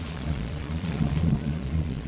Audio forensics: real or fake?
fake